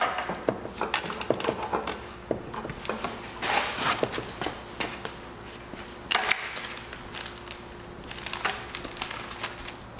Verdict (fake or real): real